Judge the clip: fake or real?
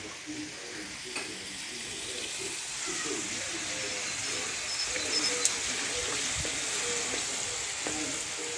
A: real